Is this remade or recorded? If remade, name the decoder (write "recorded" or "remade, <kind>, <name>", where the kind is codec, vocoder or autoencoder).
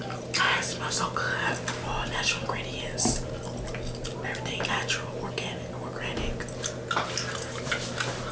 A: recorded